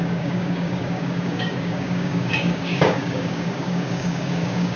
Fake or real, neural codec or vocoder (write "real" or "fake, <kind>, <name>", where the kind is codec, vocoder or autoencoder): fake, codec, DAC